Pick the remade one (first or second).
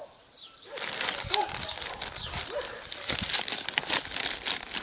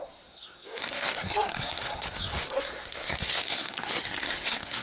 second